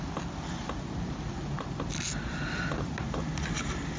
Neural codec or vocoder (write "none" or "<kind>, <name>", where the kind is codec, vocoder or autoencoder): none